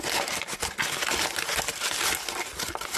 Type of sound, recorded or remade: recorded